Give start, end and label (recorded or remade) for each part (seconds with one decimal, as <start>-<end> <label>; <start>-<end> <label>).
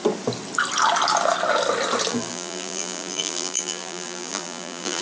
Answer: 0.0-2.1 recorded; 2.1-5.0 remade